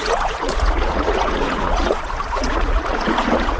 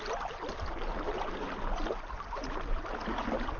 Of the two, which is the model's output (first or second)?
first